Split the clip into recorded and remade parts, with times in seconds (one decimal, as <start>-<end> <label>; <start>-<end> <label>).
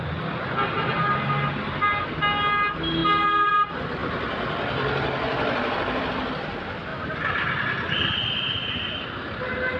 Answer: 0.0-4.0 recorded; 4.0-6.1 remade; 6.1-9.8 recorded